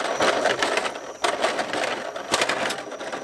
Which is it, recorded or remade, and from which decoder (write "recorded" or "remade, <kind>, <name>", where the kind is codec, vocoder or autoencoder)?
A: recorded